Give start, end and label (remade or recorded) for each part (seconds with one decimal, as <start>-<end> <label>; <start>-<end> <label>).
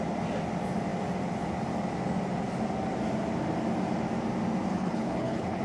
0.0-4.7 recorded; 4.7-5.6 remade